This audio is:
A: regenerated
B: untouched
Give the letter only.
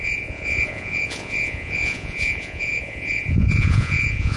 A